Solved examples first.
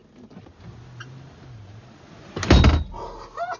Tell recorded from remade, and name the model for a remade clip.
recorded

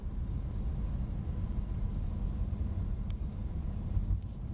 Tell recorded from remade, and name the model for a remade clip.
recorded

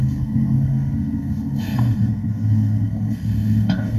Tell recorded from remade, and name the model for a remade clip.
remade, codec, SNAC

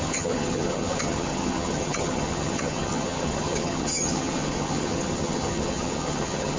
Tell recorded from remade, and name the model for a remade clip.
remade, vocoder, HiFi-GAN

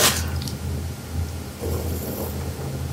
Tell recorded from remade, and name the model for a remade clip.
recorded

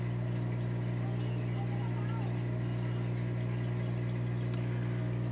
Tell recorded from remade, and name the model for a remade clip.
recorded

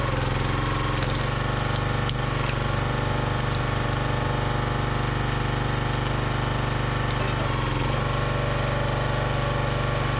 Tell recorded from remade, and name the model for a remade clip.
recorded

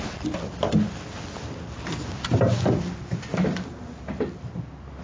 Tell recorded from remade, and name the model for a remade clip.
recorded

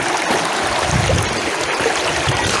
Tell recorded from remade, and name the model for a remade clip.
recorded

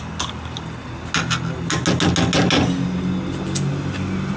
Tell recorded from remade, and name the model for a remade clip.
recorded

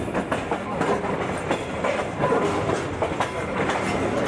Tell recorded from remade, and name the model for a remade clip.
recorded